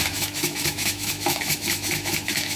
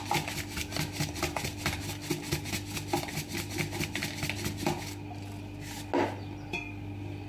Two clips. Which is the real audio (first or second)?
second